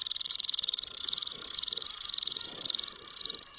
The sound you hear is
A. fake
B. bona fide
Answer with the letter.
A